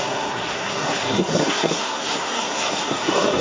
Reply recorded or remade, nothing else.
remade